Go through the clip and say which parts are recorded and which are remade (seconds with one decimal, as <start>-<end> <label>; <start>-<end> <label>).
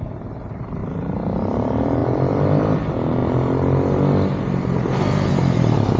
0.0-2.0 recorded; 2.0-2.8 remade; 2.8-6.0 recorded